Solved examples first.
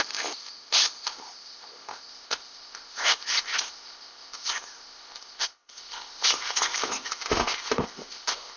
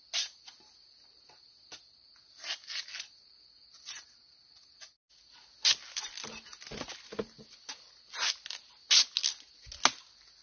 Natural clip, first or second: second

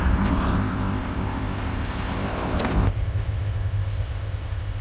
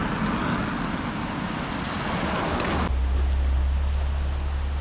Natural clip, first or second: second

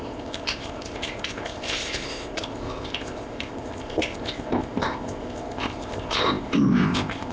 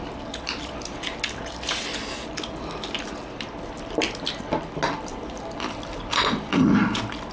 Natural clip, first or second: second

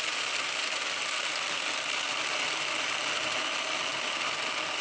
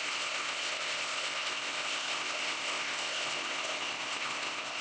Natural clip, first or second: first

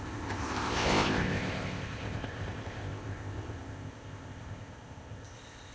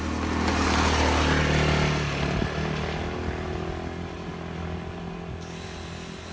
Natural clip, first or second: second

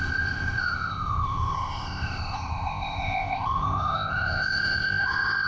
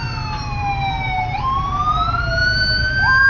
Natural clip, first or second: second